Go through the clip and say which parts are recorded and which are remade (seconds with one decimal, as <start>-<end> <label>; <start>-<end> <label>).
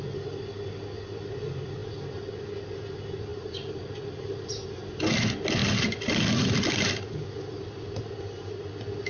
0.0-9.1 recorded